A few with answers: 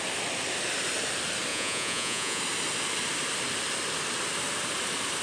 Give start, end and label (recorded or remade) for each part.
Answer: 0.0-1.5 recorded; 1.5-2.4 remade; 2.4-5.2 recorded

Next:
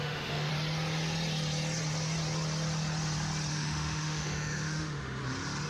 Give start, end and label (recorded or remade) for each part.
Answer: 0.0-0.5 remade; 0.5-3.5 recorded; 3.5-5.2 remade; 5.2-5.7 recorded

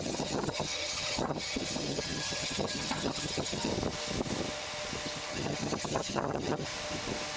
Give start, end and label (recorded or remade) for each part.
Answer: 0.0-3.7 remade; 3.7-5.3 recorded; 5.3-6.7 remade; 6.7-7.4 recorded

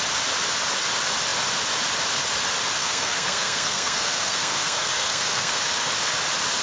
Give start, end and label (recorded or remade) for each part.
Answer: 0.0-2.8 recorded; 2.8-5.9 remade; 5.9-6.6 recorded

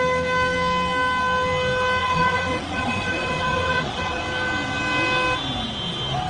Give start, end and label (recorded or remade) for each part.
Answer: 0.0-2.0 recorded; 2.0-4.2 remade; 4.2-6.3 recorded

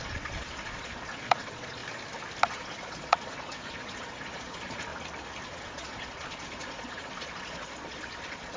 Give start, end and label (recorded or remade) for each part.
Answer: 0.0-1.8 remade; 1.8-2.5 recorded; 2.5-4.9 remade; 4.9-5.4 recorded; 5.4-8.6 remade

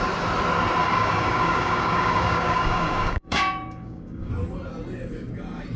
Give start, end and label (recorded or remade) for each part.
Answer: 0.0-0.8 recorded; 0.8-4.3 remade; 4.3-5.8 recorded